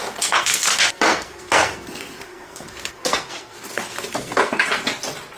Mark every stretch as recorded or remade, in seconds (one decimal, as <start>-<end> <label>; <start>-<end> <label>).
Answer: 0.0-4.9 remade; 4.9-5.4 recorded